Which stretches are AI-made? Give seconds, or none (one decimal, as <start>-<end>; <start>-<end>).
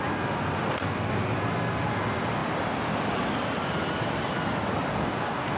0.6-1.2; 4.9-5.6